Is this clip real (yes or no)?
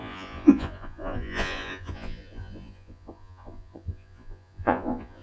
no